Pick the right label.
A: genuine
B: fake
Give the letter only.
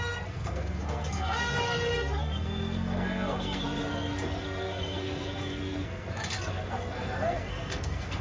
B